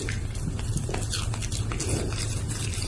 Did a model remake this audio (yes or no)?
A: no